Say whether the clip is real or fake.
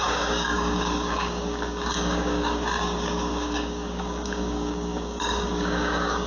fake